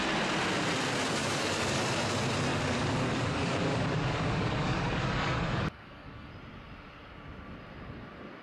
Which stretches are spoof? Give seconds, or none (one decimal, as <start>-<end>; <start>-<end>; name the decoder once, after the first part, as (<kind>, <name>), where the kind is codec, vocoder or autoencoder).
1.2-1.8 (codec, DAC); 2.5-6.3